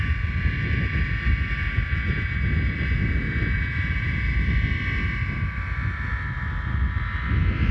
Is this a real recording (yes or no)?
yes